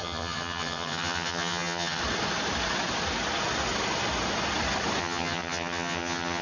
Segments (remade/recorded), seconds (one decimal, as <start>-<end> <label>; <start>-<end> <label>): 0.0-2.0 remade; 2.0-5.0 recorded; 5.0-6.4 remade